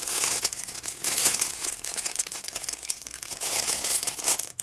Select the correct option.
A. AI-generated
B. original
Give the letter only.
A